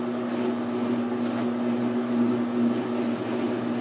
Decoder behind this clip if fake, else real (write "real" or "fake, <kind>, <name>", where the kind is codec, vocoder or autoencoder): real